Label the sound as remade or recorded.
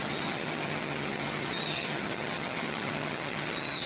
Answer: remade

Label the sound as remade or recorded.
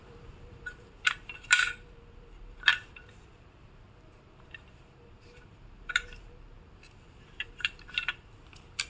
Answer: remade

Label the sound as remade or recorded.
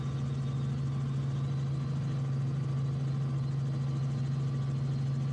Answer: recorded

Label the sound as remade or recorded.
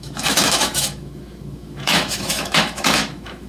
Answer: remade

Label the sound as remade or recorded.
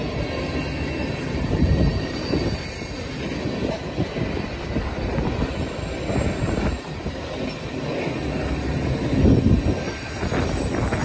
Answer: recorded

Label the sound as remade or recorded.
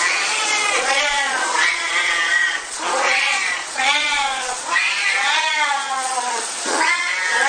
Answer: remade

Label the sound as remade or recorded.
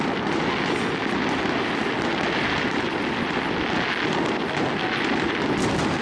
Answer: recorded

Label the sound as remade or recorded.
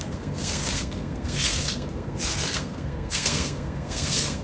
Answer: remade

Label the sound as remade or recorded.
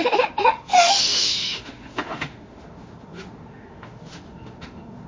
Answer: remade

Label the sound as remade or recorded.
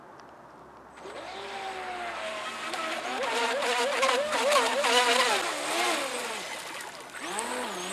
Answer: recorded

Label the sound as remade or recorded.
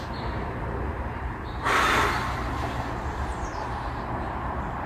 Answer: remade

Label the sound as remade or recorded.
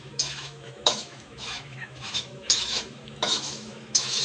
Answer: remade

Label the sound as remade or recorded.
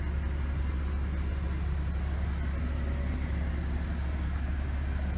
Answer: recorded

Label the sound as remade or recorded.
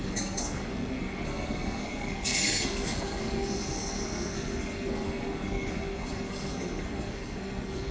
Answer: remade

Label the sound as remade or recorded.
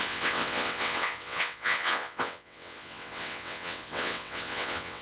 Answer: remade